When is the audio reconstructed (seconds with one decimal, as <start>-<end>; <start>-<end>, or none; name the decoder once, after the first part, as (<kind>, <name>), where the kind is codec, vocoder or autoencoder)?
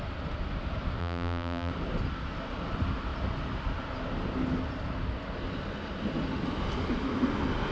1.0-1.7 (vocoder, BigVGAN v2)